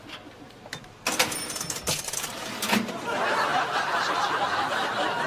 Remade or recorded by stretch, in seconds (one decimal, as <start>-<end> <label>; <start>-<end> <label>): 0.0-5.3 recorded